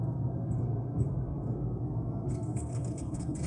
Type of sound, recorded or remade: remade